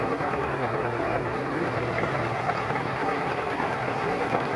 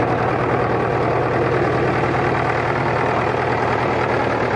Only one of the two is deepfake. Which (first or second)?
first